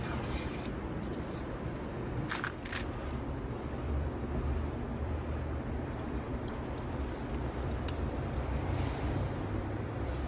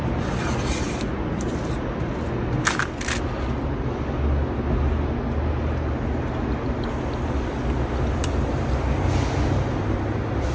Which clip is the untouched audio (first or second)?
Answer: second